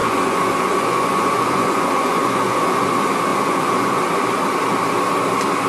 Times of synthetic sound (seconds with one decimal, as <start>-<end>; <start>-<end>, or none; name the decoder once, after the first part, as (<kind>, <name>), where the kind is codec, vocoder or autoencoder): 0.0-2.9 (vocoder, Vocos); 3.3-4.0